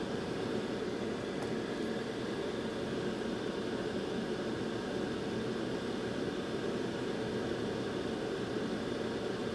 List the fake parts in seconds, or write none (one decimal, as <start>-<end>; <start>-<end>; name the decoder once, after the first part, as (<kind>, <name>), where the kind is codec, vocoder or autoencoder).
none